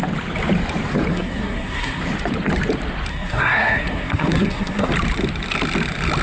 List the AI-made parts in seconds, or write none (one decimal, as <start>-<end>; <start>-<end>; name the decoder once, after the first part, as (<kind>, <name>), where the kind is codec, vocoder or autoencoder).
1.1-2.0 (codec, SNAC); 3.1-4.9